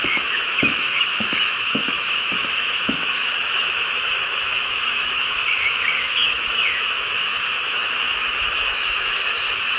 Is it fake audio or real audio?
fake